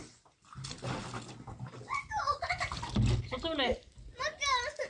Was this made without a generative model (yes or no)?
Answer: yes